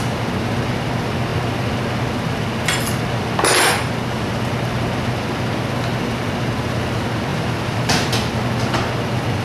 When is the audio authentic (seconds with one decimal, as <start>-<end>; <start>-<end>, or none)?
0.0-7.3; 8.3-9.4